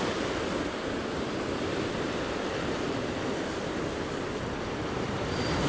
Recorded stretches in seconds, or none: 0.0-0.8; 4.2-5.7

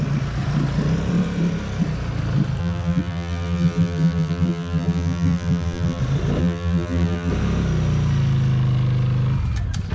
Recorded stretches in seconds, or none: 0.0-2.6; 6.0-6.4; 7.3-9.9

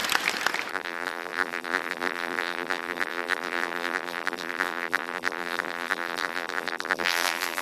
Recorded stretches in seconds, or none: 0.0-0.7

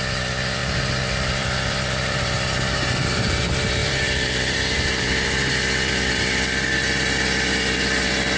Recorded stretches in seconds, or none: 0.0-0.6; 3.4-3.8; 5.5-8.4